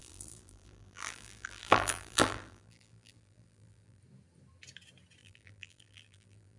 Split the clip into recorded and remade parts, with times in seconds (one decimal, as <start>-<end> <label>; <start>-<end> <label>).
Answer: 0.0-4.0 remade; 4.0-5.2 recorded; 5.2-6.6 remade

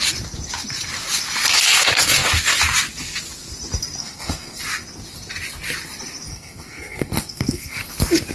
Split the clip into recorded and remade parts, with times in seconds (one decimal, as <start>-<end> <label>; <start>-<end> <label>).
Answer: 0.0-4.0 recorded; 4.0-4.6 remade; 4.6-6.3 recorded; 6.3-7.9 remade; 7.9-8.3 recorded

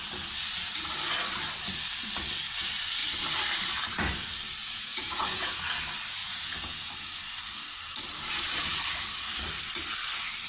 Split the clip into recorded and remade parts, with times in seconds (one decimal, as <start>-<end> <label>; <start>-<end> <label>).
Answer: 0.0-4.6 recorded; 4.6-5.6 remade; 5.6-6.2 recorded; 6.2-6.9 remade; 6.9-10.5 recorded

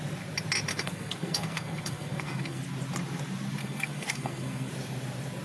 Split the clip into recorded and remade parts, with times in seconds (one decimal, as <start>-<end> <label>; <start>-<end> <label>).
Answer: 0.0-0.7 recorded; 0.7-2.6 remade; 2.6-3.6 recorded; 3.6-4.7 remade; 4.7-5.4 recorded